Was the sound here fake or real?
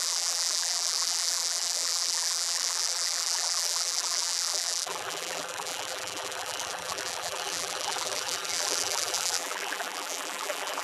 fake